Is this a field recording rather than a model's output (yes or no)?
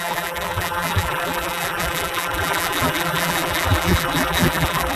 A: no